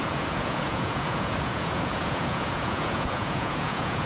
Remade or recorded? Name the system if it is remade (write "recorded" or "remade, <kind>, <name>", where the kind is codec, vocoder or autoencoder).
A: remade, vocoder, Vocos